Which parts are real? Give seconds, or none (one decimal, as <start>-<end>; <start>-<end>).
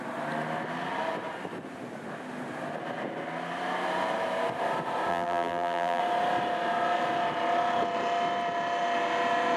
0.0-5.1; 6.0-9.6